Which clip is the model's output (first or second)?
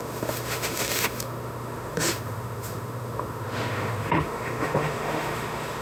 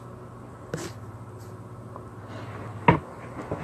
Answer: first